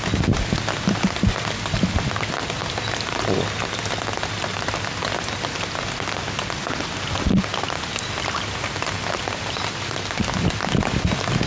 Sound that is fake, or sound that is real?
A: real